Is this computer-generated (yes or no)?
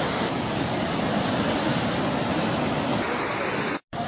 no